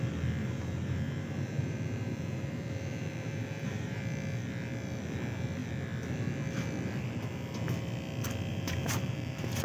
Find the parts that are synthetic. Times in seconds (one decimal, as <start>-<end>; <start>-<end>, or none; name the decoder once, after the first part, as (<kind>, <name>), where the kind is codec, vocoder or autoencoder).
0.4-4.0 (vocoder, BigVGAN v2); 8.5-9.6